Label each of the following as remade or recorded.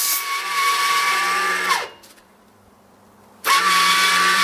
remade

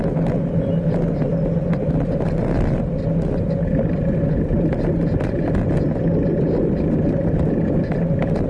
recorded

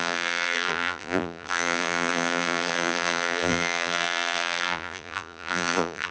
remade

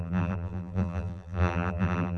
remade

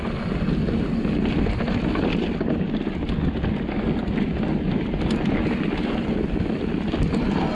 recorded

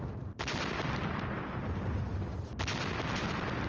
recorded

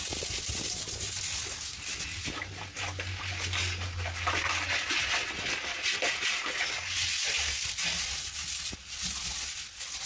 recorded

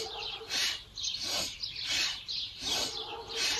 remade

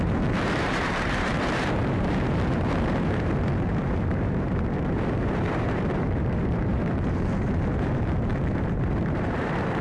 remade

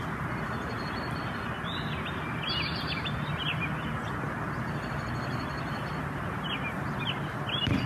recorded